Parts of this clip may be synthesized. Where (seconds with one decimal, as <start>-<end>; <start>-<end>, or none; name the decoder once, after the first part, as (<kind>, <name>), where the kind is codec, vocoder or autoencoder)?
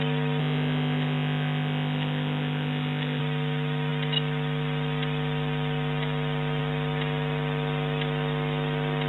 0.4-3.2 (autoencoder, DAC-VAE)